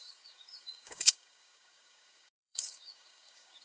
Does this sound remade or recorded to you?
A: remade